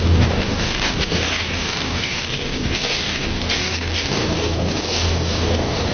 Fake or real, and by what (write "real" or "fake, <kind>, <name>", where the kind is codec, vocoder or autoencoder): fake, codec, DAC